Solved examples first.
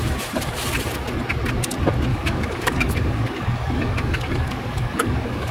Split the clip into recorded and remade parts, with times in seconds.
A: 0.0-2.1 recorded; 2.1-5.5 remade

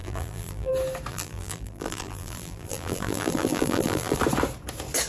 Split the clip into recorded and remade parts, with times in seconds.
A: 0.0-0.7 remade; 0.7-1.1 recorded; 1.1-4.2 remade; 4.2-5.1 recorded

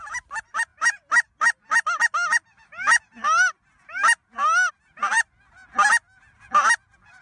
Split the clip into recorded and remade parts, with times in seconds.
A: 0.0-7.2 recorded